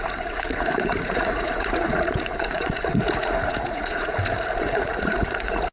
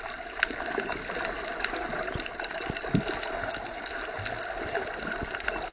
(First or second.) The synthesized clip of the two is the first